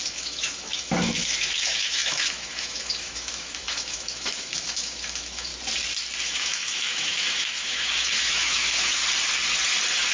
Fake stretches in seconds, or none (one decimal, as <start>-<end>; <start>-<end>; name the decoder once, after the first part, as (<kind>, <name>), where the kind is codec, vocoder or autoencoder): 0.0-5.5 (autoencoder, DAC-VAE); 6.2-9.0